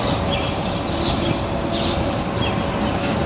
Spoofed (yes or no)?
no